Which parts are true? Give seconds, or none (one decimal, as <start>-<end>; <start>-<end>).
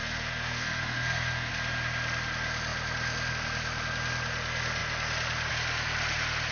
1.5-6.5